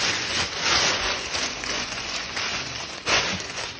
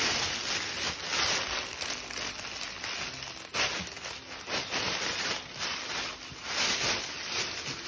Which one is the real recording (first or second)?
second